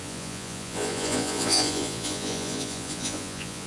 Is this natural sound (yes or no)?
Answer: no